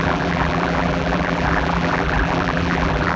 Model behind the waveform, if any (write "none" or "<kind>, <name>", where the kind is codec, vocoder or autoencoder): vocoder, BigVGAN v2